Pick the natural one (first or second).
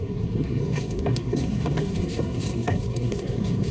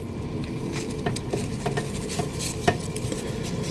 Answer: second